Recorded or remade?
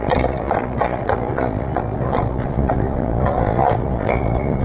remade